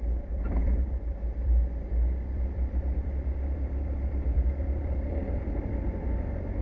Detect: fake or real fake